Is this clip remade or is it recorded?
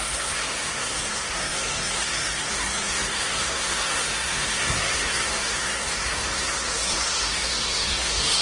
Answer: remade